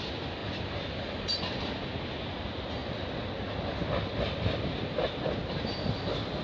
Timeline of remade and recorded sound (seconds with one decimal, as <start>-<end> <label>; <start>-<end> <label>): 0.0-6.4 recorded